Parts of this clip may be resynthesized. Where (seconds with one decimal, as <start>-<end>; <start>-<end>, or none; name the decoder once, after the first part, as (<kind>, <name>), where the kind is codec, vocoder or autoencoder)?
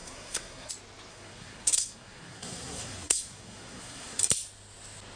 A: 0.0-0.7 (codec, SNAC); 1.1-4.2